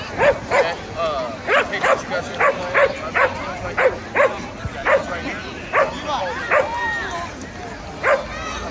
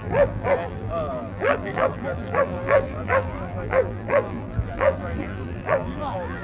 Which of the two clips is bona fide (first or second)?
first